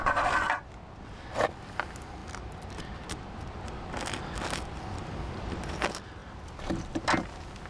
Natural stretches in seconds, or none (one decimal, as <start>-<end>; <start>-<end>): 0.0-7.7